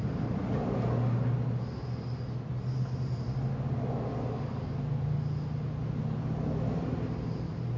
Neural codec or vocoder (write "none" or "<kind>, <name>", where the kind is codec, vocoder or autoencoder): none